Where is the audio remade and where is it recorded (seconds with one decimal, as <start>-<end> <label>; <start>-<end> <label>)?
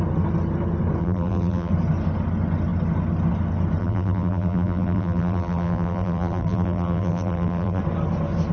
0.0-1.0 recorded; 1.0-1.7 remade; 1.7-3.8 recorded; 3.8-7.8 remade; 7.8-8.5 recorded